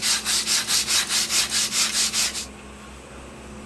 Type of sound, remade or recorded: recorded